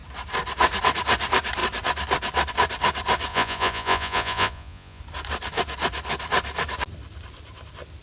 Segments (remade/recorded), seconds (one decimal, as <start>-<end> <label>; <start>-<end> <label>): 0.0-3.3 recorded; 3.3-5.0 remade; 5.0-8.0 recorded